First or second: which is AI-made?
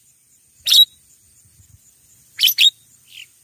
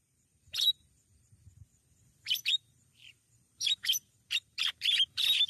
second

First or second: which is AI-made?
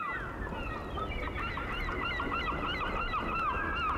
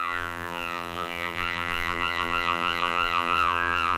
second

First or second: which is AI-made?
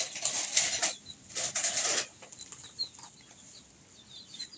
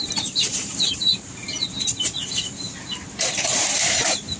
second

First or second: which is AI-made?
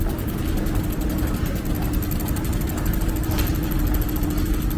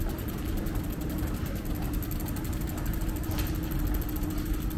second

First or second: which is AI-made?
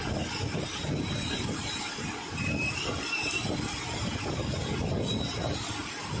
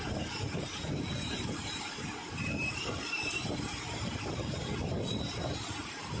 second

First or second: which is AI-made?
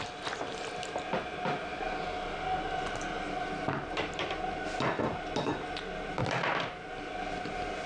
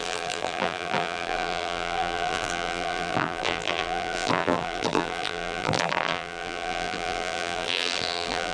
second